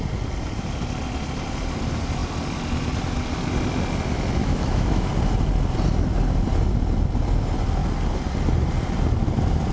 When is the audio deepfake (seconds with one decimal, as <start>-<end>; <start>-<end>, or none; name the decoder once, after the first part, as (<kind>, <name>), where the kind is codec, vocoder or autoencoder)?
4.4-5.1 (autoencoder, DAC-VAE)